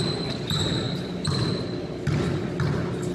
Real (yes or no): yes